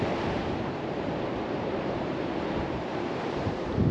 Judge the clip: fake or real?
fake